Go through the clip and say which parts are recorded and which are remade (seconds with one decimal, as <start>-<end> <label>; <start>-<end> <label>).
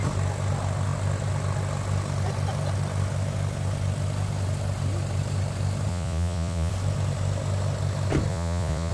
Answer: 0.0-5.9 recorded; 5.9-6.7 remade; 6.7-8.3 recorded; 8.3-8.9 remade